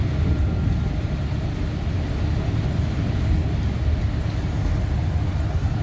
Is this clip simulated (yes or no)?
no